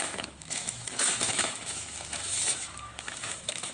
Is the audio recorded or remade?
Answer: remade